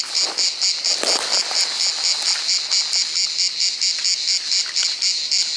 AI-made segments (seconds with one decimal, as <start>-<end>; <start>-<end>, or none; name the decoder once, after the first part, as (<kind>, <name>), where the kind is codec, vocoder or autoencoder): none